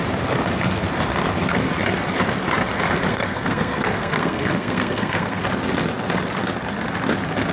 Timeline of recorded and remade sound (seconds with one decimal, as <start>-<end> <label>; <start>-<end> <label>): 0.0-3.1 recorded; 3.1-5.4 remade; 5.4-7.5 recorded

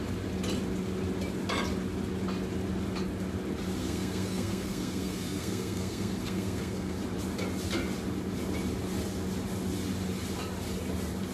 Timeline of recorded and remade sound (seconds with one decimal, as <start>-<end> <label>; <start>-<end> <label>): 0.0-3.8 recorded; 3.8-7.0 remade; 7.0-11.3 recorded

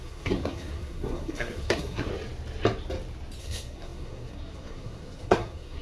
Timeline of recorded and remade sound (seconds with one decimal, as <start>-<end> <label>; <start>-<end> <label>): 0.0-2.1 remade; 2.1-3.4 recorded; 3.4-5.8 remade